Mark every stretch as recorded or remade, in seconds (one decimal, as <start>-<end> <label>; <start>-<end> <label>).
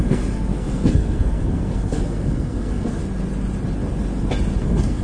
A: 0.0-3.0 remade; 3.0-4.6 recorded; 4.6-5.0 remade